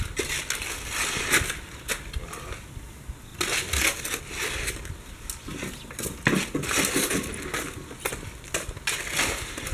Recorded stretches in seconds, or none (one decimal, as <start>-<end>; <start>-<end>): 0.0-9.7